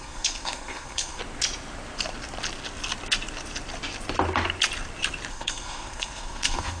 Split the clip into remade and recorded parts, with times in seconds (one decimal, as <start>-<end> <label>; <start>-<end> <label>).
0.0-1.2 remade; 1.2-5.3 recorded; 5.3-6.8 remade